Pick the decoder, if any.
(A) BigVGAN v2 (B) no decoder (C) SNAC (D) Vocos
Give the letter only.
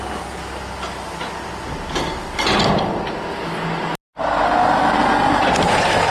B